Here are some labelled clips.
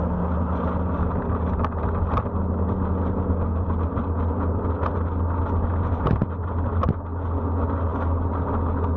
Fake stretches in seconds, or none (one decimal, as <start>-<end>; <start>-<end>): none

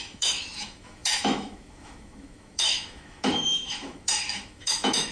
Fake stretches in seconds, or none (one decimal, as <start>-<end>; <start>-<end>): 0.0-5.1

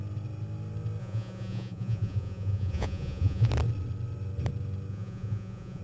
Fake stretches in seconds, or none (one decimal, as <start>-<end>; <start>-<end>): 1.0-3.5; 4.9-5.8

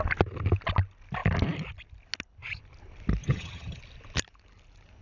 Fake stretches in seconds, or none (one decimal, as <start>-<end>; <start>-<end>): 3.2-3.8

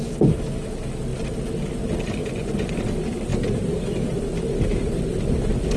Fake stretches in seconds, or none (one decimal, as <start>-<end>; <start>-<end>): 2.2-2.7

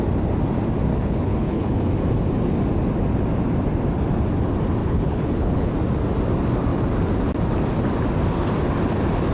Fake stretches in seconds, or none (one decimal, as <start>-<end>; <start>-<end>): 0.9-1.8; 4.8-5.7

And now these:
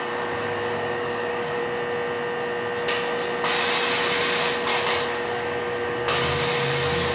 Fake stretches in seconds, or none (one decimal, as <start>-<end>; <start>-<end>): 0.0-1.6; 4.9-7.1

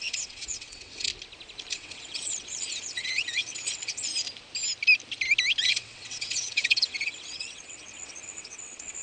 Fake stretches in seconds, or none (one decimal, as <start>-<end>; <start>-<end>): 0.0-1.1; 1.7-4.1; 5.6-9.0